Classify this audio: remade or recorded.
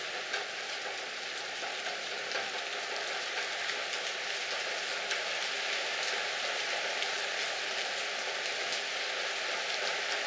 recorded